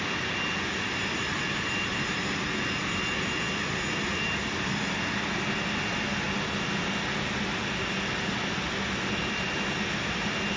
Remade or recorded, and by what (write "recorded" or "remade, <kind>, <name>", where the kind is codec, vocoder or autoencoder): recorded